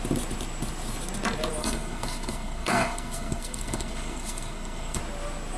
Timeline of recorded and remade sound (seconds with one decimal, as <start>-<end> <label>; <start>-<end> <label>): 0.0-1.6 recorded; 1.6-5.0 remade; 5.0-5.6 recorded